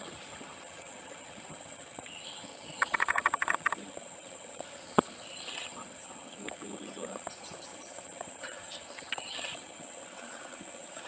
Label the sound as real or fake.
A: fake